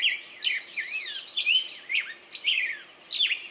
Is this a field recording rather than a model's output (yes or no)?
yes